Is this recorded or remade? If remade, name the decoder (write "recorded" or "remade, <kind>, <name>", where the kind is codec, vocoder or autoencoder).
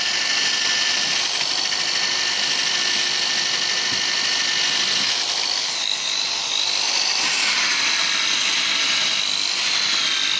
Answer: recorded